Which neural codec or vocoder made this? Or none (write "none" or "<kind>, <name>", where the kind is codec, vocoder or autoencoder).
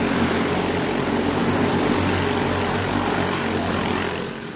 none